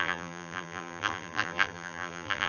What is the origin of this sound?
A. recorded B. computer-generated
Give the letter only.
B